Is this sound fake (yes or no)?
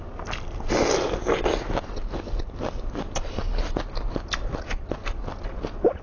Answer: no